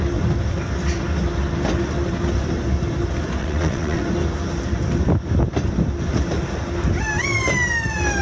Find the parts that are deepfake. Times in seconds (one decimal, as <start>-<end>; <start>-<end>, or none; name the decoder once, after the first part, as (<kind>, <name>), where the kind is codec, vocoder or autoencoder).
3.4-4.0 (vocoder, WaveNeXt)